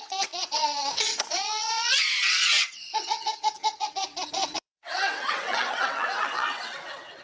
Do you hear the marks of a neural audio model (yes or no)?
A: yes